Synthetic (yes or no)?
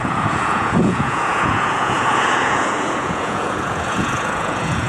yes